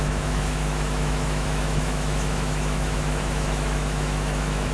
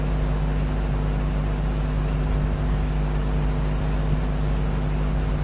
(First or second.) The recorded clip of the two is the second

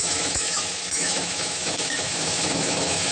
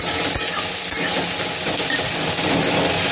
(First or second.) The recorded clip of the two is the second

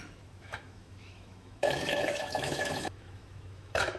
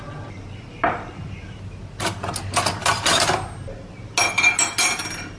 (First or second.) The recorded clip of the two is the second